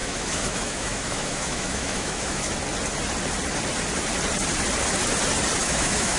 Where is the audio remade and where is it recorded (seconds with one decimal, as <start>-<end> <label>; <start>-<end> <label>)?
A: 0.0-2.5 remade; 2.5-5.6 recorded; 5.6-6.2 remade